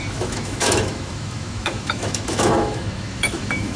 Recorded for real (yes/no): no